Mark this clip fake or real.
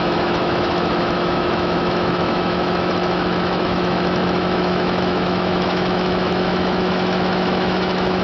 fake